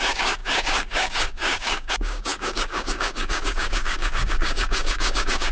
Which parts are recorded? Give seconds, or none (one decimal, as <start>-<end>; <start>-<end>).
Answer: none